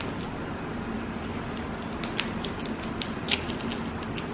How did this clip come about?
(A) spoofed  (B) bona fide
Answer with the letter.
B